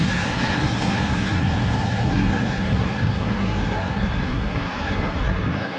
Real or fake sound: fake